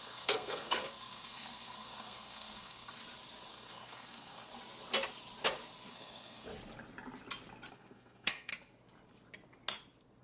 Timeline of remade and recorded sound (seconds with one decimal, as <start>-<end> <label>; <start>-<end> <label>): 0.0-3.0 remade; 3.0-3.5 recorded; 3.5-4.5 remade; 4.5-5.9 recorded; 5.9-6.5 remade; 6.5-7.7 recorded; 7.7-8.5 remade; 8.5-10.2 recorded